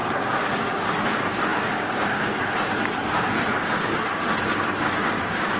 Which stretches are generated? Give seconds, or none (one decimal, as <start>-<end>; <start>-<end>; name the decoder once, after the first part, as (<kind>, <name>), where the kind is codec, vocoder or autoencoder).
0.0-5.6 (codec, DAC)